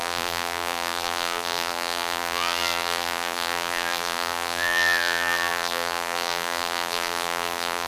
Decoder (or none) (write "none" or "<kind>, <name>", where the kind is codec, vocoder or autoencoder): vocoder, BigVGAN v2